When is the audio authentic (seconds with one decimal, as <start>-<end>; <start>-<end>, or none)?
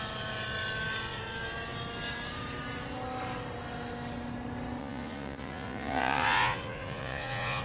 0.0-4.8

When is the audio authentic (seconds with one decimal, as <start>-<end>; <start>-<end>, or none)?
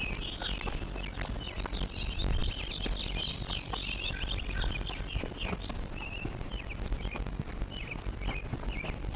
0.0-9.2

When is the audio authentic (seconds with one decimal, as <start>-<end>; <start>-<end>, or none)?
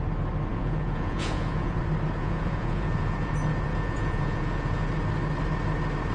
0.0-0.5; 1.8-2.2; 3.3-3.7; 4.9-6.1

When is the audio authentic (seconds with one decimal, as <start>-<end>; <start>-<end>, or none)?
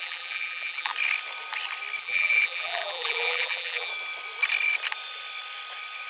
0.9-2.0; 3.9-6.1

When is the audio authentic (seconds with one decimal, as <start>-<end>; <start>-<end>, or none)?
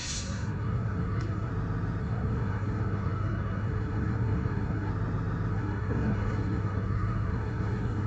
1.5-2.0; 4.9-5.5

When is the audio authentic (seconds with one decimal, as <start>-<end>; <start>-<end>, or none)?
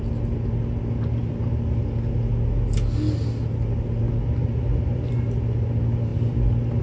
0.0-6.8